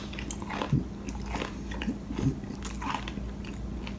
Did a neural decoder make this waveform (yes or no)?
no